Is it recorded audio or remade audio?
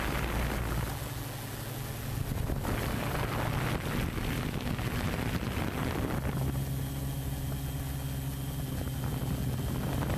recorded